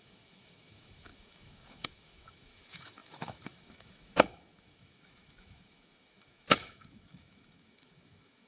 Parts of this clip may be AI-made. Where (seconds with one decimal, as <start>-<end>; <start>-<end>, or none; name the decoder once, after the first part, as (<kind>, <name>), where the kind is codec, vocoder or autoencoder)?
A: 0.0-8.5 (autoencoder, DAC-VAE)